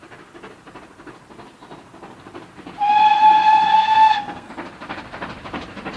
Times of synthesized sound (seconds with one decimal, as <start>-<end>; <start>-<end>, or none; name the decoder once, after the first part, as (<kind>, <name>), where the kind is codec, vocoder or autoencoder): 3.7-4.5 (codec, SNAC)